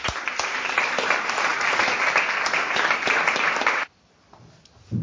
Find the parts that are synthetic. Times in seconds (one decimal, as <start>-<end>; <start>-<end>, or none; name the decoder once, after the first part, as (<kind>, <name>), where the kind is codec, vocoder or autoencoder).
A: 0.0-5.0 (vocoder, BigVGAN v2)